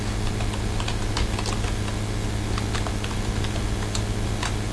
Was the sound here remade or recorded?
recorded